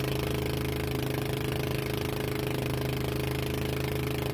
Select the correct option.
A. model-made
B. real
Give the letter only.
B